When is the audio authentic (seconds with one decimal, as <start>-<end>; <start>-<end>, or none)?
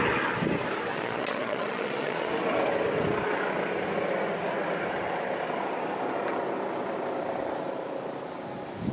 0.0-0.9; 2.3-8.9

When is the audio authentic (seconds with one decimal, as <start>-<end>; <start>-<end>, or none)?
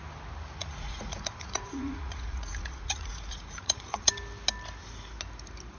0.0-0.6; 4.1-5.8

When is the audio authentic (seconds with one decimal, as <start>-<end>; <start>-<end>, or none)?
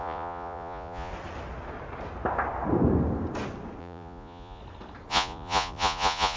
1.1-3.8; 4.6-5.1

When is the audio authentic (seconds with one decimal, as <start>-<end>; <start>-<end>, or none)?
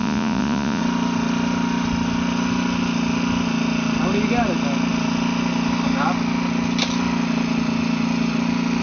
0.8-8.8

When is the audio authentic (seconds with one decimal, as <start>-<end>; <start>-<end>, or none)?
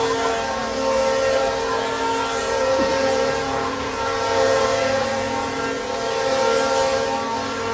0.0-2.4; 5.6-7.7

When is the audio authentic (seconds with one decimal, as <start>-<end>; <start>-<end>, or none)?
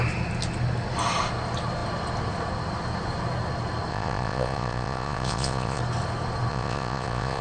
0.0-3.9; 5.8-6.5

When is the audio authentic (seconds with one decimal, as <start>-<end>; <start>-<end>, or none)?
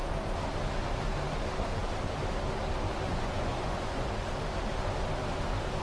0.0-3.1; 4.1-5.8